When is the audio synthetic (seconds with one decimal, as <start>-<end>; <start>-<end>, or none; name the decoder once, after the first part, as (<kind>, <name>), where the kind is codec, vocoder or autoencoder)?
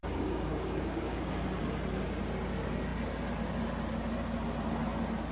0.0-1.6 (codec, DAC)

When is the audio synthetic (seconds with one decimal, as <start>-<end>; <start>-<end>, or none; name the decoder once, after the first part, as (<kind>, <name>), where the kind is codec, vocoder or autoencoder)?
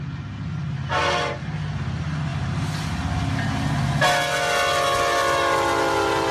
none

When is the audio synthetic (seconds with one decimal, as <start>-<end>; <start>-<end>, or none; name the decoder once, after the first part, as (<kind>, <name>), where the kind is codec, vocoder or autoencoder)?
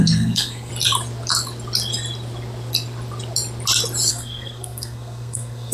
0.0-0.7 (codec, SNAC); 4.1-5.7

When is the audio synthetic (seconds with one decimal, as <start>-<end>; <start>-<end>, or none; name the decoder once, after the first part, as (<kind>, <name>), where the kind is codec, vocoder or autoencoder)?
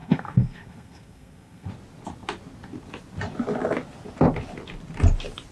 0.0-1.7 (codec, SNAC)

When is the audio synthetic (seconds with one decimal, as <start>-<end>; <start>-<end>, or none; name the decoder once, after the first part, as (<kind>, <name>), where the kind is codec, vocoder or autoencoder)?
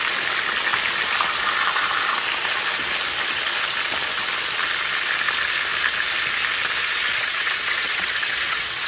6.8-8.9 (vocoder, WaveNeXt)